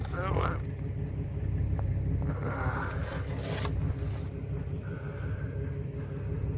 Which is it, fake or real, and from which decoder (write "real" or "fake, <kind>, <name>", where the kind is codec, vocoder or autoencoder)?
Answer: real